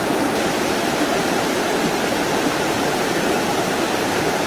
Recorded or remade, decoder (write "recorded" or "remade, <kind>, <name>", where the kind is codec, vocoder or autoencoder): remade, vocoder, BigVGAN v2